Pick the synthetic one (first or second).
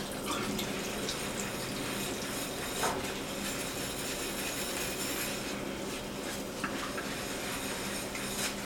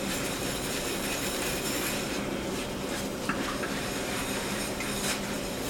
second